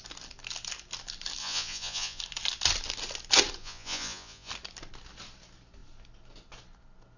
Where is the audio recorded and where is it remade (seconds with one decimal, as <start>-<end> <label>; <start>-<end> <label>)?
0.0-1.4 recorded; 1.4-2.2 remade; 2.2-3.6 recorded; 3.6-4.5 remade; 4.5-7.2 recorded